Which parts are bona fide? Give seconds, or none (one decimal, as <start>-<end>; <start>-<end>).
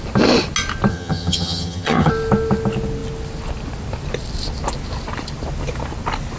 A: 0.0-0.9; 2.1-6.4